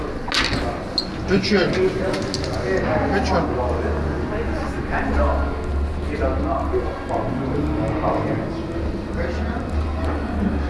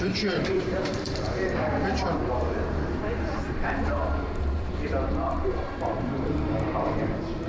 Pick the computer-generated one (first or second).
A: second